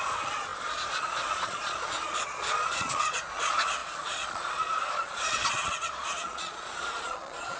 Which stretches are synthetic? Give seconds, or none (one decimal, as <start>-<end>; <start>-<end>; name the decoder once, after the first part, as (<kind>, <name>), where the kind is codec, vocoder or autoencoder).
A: 0.0-7.6 (vocoder, Vocos)